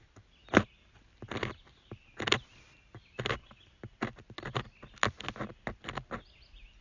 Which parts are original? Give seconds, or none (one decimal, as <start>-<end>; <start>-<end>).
0.0-6.8